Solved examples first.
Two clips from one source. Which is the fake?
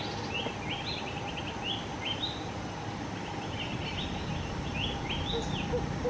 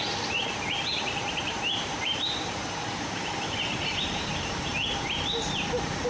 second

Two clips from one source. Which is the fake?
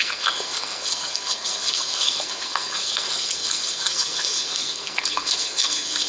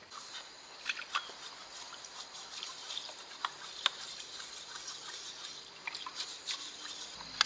first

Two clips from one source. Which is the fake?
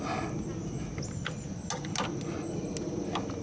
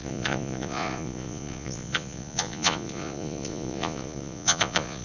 second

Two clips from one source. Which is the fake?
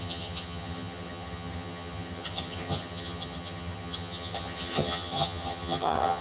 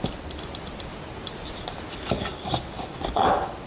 first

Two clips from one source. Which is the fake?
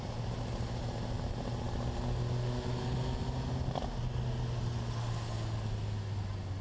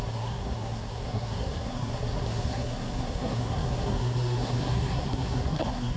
second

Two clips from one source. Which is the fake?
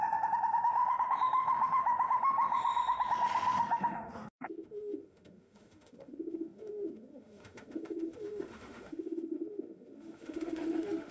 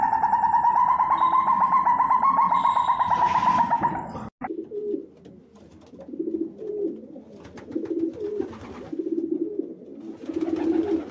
first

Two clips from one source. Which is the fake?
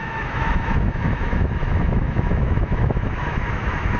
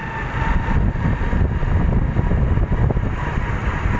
first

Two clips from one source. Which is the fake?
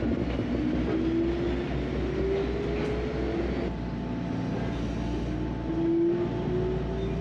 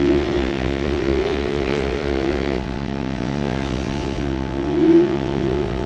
second